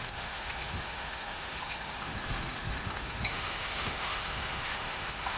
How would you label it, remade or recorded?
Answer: remade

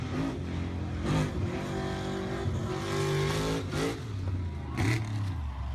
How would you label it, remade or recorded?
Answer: recorded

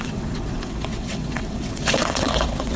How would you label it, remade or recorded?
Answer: remade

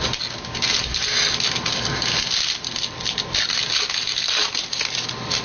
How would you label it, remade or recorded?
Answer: recorded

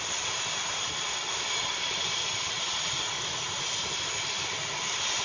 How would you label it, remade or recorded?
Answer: remade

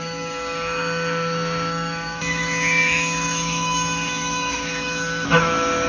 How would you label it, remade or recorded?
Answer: remade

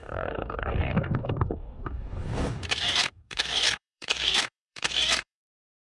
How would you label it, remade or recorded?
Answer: remade